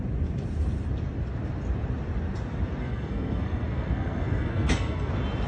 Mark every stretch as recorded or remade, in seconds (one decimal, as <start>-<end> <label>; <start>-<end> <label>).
0.0-2.8 recorded; 2.8-5.1 remade; 5.1-5.5 recorded

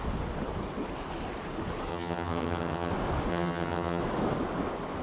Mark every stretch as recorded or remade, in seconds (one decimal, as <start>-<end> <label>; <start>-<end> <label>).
0.0-1.9 recorded; 1.9-2.9 remade; 2.9-3.3 recorded; 3.3-4.0 remade; 4.0-5.0 recorded

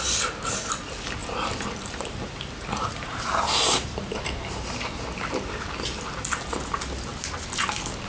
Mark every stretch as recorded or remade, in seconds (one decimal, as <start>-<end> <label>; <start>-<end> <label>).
0.0-1.2 recorded; 1.2-5.0 remade; 5.0-8.1 recorded

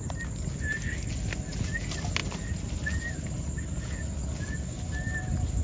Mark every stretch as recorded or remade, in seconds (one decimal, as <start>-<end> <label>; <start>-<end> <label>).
0.0-5.6 recorded

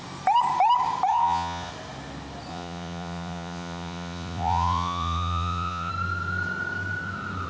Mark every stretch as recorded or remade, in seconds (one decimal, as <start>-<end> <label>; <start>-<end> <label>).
0.0-1.1 recorded; 1.1-1.7 remade; 1.7-2.5 recorded; 2.5-5.9 remade; 5.9-7.5 recorded

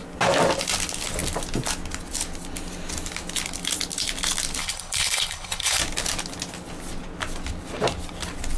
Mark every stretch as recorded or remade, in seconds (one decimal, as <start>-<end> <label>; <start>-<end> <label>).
0.0-4.6 recorded; 4.6-5.8 remade; 5.8-8.6 recorded

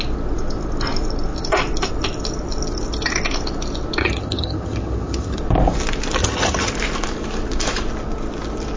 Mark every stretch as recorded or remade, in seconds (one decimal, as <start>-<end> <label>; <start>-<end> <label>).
0.0-4.0 recorded; 4.0-5.4 remade; 5.4-6.2 recorded; 6.2-6.7 remade; 6.7-8.8 recorded

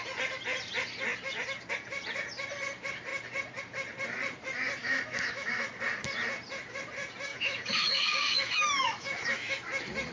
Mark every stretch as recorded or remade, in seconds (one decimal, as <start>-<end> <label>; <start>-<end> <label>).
0.0-4.8 recorded; 4.8-5.7 remade; 5.7-7.3 recorded; 7.3-9.5 remade; 9.5-10.1 recorded